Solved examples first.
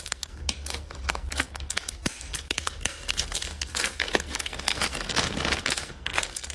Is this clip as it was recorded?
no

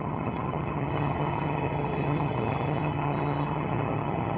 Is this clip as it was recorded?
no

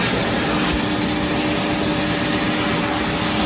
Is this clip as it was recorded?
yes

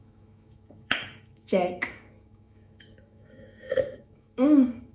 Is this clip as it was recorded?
no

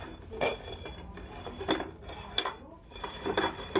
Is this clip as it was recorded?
yes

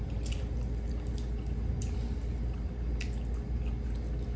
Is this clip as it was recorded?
yes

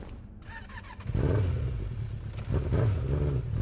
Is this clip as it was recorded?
yes